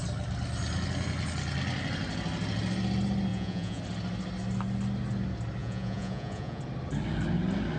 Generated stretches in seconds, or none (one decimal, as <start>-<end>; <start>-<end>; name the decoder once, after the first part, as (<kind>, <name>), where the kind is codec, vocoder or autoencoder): 3.3-3.8 (vocoder, Vocos); 5.6-6.6